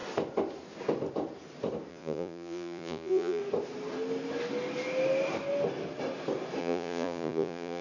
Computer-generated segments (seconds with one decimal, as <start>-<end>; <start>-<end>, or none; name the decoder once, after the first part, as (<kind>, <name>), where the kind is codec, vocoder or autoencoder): 1.9-3.4 (vocoder, Vocos); 6.6-7.8